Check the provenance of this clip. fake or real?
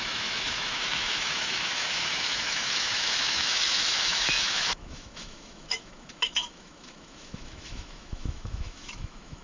fake